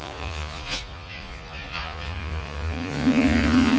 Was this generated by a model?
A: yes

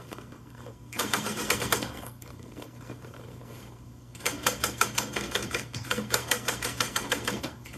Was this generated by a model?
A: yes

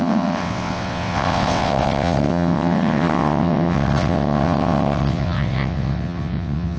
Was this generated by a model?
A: yes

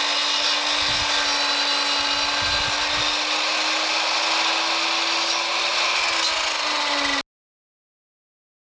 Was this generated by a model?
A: no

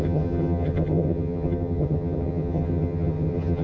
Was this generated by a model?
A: yes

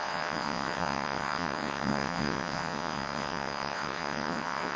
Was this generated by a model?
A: yes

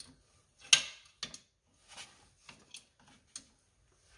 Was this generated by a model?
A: no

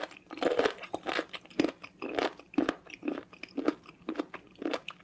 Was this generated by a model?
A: no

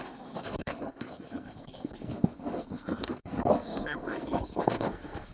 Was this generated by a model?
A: yes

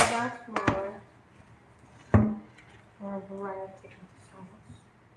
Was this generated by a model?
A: no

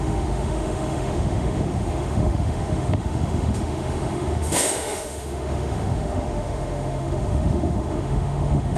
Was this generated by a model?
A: yes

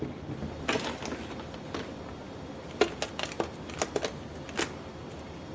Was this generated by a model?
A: no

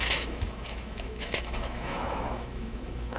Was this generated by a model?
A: yes